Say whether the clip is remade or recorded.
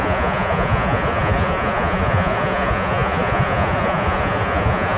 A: remade